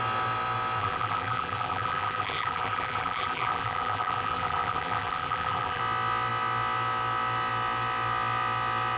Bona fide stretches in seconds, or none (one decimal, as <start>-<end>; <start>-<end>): 0.0-0.8; 5.8-9.0